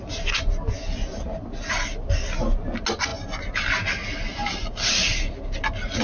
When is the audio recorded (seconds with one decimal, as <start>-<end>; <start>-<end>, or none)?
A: 0.0-6.0